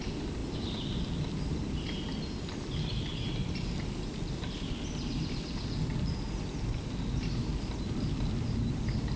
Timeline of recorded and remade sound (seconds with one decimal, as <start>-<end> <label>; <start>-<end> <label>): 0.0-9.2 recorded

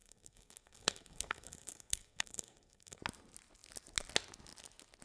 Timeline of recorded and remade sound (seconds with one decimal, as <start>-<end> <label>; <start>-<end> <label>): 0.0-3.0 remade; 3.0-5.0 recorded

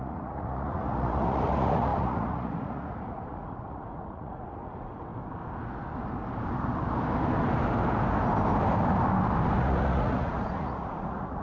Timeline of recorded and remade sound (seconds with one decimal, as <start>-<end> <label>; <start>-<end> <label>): 0.0-5.1 remade; 5.1-9.6 recorded; 9.6-11.4 remade

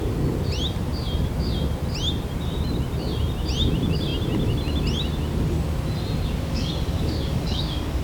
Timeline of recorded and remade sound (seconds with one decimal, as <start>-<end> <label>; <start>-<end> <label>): 0.0-6.5 recorded; 6.5-8.0 remade

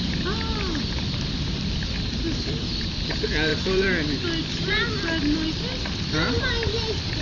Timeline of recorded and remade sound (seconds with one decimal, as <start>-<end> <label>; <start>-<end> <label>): 0.0-7.2 recorded